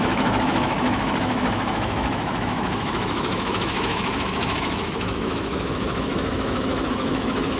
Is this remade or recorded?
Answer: remade